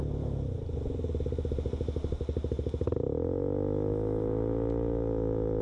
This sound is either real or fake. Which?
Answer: real